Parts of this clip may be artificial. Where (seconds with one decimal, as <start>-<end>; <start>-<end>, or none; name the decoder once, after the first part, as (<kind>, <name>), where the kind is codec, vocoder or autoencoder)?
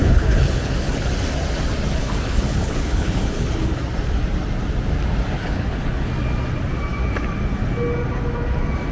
0.0-1.1 (codec, HILCodec); 2.0-3.8; 5.4-6.1